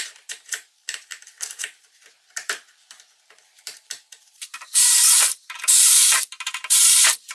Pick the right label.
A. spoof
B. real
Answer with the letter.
A